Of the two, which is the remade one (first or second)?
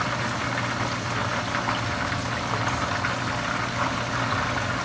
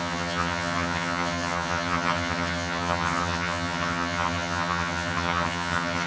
second